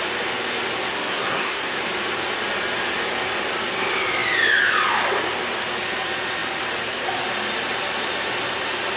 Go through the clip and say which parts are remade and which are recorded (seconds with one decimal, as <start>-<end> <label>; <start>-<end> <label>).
0.0-0.9 recorded; 0.9-1.8 remade; 1.8-9.0 recorded